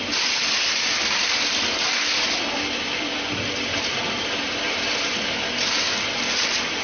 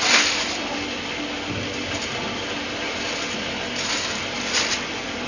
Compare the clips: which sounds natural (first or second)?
second